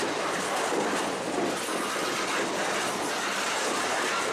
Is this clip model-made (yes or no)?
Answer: no